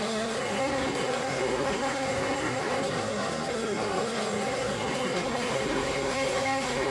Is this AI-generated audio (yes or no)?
yes